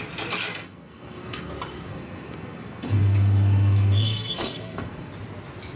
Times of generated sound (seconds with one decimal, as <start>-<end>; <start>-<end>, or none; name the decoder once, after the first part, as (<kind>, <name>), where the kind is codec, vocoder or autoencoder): 0.5-1.5 (codec, SNAC); 1.9-5.1